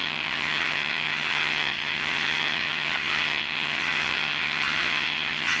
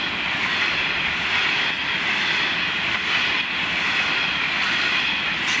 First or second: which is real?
second